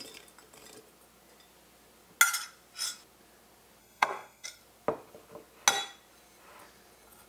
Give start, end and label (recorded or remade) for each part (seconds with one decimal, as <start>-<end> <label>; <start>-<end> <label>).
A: 0.0-3.8 recorded; 3.8-4.6 remade; 4.6-7.3 recorded